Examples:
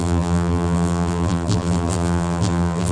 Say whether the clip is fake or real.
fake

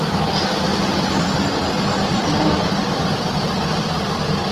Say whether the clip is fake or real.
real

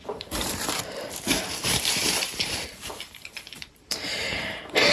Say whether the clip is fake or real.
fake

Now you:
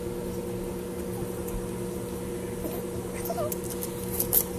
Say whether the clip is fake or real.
real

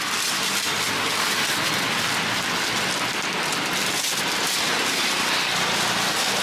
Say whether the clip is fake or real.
real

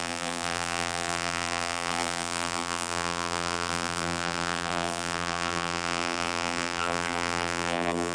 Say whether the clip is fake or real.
fake